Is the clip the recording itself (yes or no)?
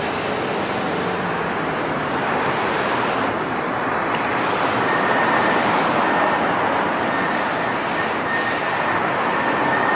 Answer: yes